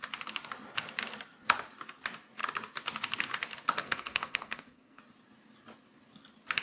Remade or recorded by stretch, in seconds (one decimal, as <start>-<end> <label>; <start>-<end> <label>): 0.0-3.8 recorded; 3.8-5.0 remade; 5.0-6.6 recorded

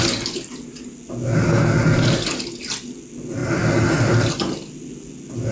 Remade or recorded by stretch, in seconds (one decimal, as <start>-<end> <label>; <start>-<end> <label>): 0.0-5.5 recorded

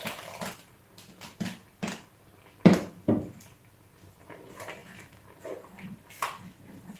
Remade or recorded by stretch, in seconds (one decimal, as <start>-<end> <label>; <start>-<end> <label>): 0.0-7.0 recorded

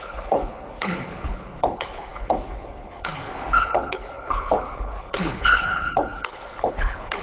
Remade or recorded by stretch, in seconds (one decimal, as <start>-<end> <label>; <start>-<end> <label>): 0.0-7.2 remade